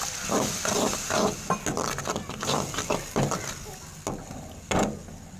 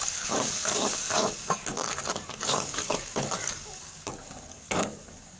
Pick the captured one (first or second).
first